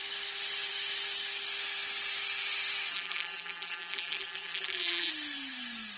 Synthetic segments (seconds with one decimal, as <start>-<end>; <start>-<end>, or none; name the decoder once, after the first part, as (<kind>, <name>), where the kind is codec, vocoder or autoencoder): 2.9-5.1 (vocoder, BigVGAN v2)